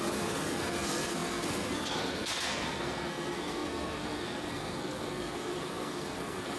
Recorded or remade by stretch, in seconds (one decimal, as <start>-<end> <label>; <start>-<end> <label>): 0.0-6.6 remade